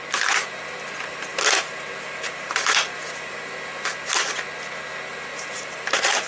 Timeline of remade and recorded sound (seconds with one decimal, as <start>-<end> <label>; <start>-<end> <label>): 0.0-1.3 recorded; 1.3-3.4 remade; 3.4-5.3 recorded; 5.3-6.3 remade